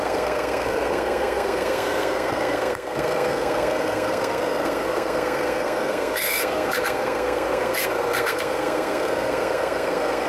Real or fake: fake